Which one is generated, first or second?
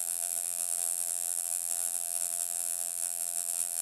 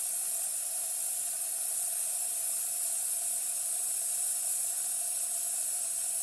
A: first